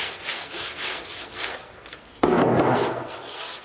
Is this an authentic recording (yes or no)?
no